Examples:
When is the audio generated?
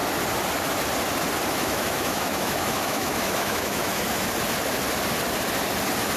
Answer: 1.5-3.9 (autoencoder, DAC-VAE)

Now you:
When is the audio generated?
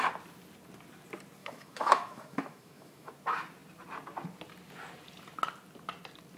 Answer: 1.4-3.1 (autoencoder, DAC-VAE)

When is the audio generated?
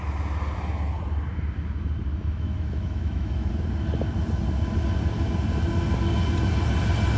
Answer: 2.1-3.5 (autoencoder, DAC-VAE)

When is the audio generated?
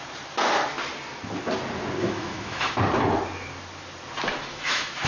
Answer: 2.0-2.8 (autoencoder, DAC-VAE); 4.5-5.1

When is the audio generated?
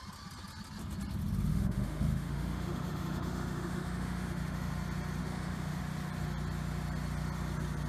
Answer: 1.5-4.7 (autoencoder, DAC-VAE); 5.2-5.8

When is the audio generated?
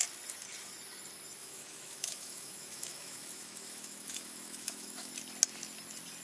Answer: 1.4-5.1 (autoencoder, DAC-VAE)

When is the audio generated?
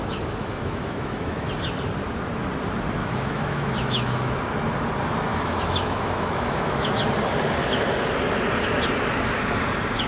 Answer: 0.0-1.5 (autoencoder, DAC-VAE); 3.0-4.4; 5.3-6.9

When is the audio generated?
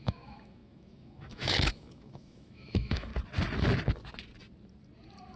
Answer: 0.0-3.1 (autoencoder, DAC-VAE)